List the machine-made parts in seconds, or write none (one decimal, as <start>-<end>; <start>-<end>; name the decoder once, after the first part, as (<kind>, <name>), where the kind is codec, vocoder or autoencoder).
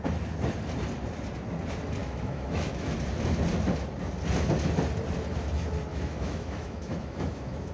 2.0-2.9 (autoencoder, DAC-VAE); 5.9-7.7